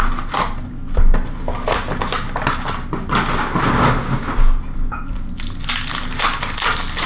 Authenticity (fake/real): real